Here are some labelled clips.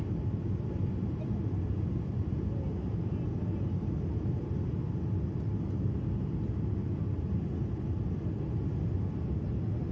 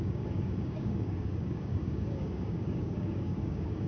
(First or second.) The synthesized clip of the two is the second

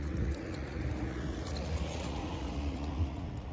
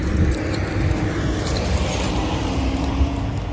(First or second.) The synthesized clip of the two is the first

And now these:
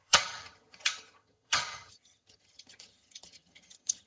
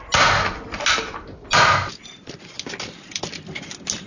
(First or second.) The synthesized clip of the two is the first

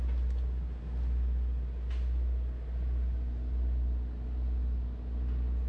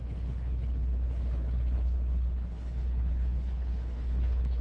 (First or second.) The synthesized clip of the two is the second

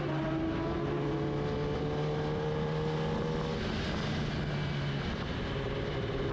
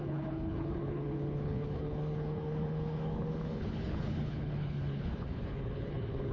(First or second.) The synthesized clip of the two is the second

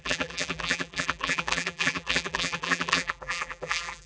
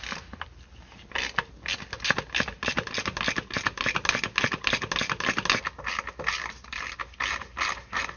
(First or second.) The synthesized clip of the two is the first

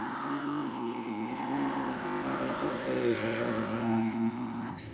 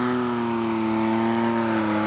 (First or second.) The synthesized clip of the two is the first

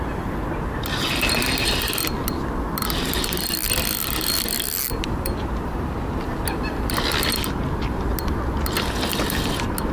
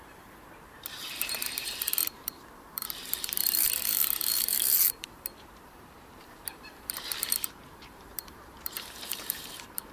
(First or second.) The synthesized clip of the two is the second